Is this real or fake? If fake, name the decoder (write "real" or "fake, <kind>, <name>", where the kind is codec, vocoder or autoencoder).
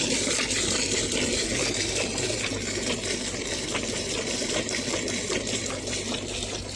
real